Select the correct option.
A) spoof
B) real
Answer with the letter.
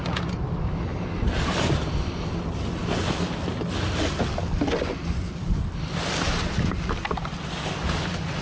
B